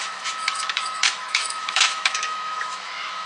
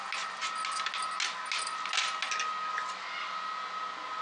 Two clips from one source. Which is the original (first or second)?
second